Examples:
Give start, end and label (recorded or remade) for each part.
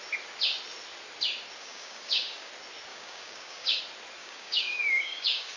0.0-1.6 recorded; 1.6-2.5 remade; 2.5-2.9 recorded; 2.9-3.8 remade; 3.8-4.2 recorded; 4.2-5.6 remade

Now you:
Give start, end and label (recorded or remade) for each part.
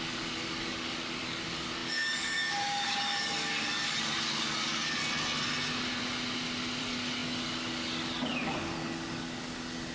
0.0-5.0 remade; 5.0-6.8 recorded; 6.8-9.9 remade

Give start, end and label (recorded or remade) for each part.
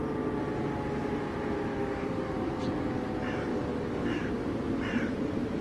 0.0-1.7 recorded; 1.7-3.1 remade; 3.1-3.5 recorded; 3.5-4.3 remade; 4.3-5.6 recorded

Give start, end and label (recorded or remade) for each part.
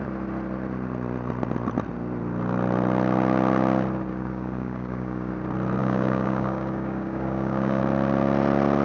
0.0-4.1 recorded; 4.1-5.3 remade; 5.3-5.8 recorded; 5.8-7.8 remade; 7.8-8.8 recorded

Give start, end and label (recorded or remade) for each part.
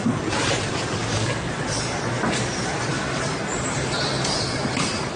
0.0-1.0 recorded; 1.0-1.5 remade; 1.5-5.2 recorded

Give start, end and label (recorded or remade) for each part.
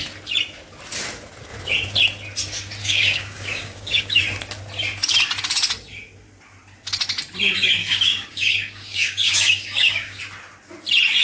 0.0-2.8 recorded; 2.8-4.2 remade; 4.2-7.8 recorded; 7.8-10.2 remade; 10.2-11.2 recorded